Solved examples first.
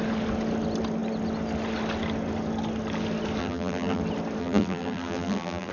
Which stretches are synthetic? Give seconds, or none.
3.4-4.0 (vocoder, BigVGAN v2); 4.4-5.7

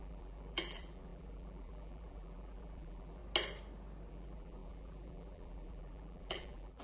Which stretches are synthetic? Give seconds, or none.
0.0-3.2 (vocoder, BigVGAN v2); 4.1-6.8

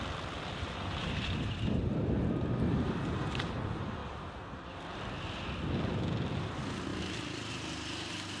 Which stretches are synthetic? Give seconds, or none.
1.0-2.0 (vocoder, BigVGAN v2)

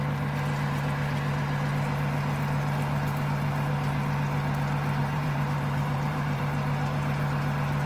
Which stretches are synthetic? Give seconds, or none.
5.0-6.4 (vocoder, BigVGAN v2)